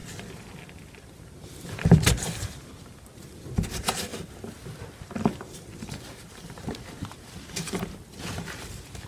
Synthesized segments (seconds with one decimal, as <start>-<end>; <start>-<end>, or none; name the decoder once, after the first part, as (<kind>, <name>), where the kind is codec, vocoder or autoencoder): 1.3-4.1 (vocoder, BigVGAN v2); 8.3-9.1